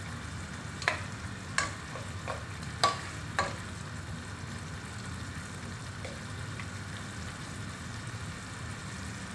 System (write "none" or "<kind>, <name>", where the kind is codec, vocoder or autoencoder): none